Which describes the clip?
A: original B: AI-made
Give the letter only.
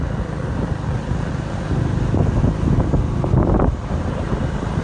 A